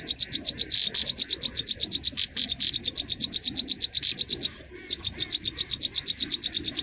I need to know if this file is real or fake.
real